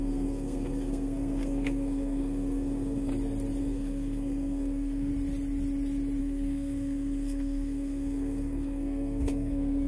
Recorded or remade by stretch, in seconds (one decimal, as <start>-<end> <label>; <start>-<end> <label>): 0.0-3.1 remade; 3.1-3.6 recorded; 3.6-5.1 remade; 5.1-6.2 recorded; 6.2-9.9 remade